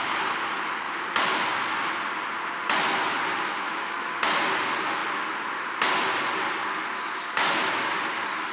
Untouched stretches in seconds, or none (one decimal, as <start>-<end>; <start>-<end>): 0.0-3.5; 4.2-8.5